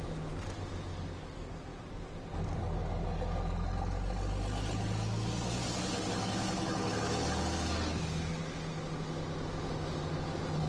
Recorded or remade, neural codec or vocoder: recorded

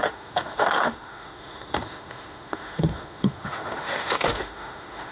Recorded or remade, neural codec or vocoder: remade, autoencoder, DAC-VAE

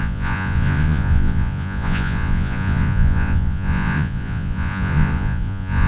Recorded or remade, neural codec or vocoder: remade, vocoder, Vocos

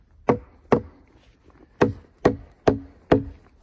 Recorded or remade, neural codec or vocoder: recorded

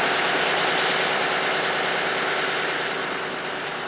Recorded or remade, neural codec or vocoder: recorded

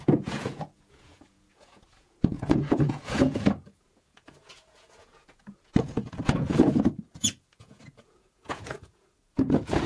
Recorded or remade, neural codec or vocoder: remade, vocoder, Vocos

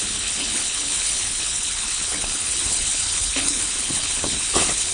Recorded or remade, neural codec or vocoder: remade, codec, HILCodec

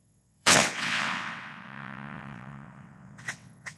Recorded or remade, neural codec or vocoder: remade, vocoder, WaveNeXt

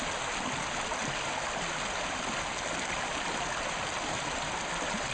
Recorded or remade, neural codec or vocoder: recorded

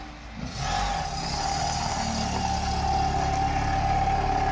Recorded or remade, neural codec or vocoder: recorded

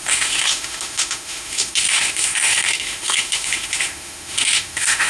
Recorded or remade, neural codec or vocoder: remade, autoencoder, DAC-VAE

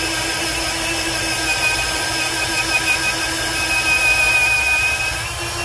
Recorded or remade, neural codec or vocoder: recorded